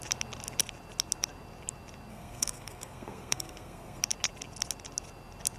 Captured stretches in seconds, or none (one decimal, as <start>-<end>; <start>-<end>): 0.0-2.1; 4.0-5.6